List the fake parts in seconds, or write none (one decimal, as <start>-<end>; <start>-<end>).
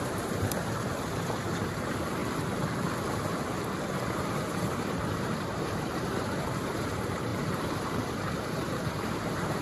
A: 0.0-2.2; 3.9-9.6